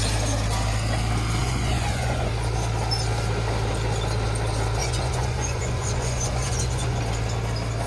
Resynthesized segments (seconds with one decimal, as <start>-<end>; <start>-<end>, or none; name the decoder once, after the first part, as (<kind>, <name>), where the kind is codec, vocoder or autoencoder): 1.4-2.3 (vocoder, Vocos); 4.8-7.0

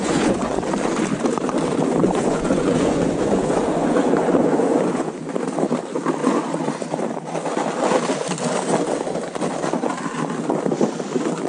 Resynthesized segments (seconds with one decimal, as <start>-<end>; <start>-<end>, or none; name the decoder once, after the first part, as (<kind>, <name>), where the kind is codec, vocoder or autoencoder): 0.0-0.6 (vocoder, Vocos); 2.0-5.3; 6.2-6.7